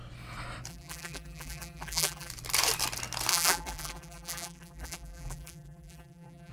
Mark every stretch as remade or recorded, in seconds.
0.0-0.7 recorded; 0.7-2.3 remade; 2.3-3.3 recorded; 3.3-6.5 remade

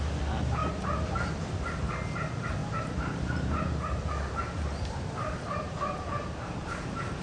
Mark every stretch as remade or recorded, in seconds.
0.0-2.6 recorded; 2.6-7.2 remade

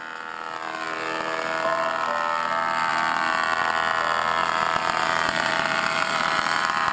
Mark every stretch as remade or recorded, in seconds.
0.0-4.4 recorded; 4.4-6.9 remade

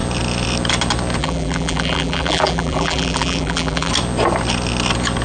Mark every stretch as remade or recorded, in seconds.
0.0-1.2 recorded; 1.2-3.9 remade; 3.9-5.2 recorded